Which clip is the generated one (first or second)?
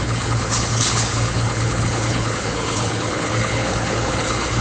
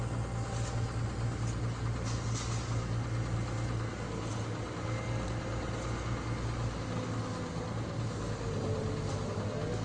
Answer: first